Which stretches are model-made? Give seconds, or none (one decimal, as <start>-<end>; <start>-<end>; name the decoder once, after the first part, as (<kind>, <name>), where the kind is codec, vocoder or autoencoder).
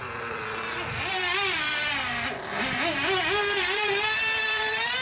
0.9-5.0 (vocoder, BigVGAN v2)